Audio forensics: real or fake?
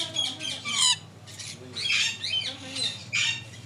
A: real